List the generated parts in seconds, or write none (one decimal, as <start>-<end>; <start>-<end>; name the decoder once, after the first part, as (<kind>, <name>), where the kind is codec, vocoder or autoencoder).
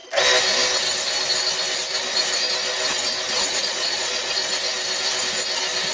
3.5-4.4 (vocoder, Vocos)